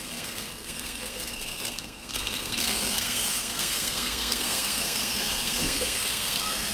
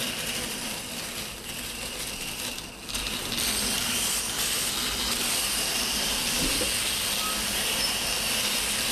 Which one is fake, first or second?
first